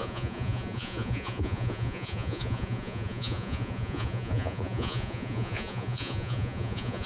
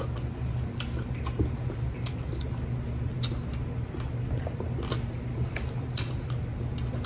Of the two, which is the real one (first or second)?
second